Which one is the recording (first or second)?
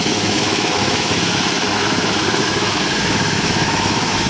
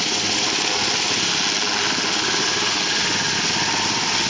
second